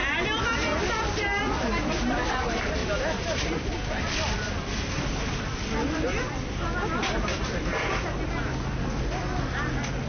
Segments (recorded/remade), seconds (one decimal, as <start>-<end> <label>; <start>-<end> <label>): 0.0-2.8 recorded; 2.8-6.9 remade; 6.9-10.1 recorded